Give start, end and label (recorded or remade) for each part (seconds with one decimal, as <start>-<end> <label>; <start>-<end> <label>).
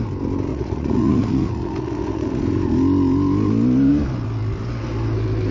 0.0-0.5 recorded; 0.5-2.4 remade; 2.4-5.5 recorded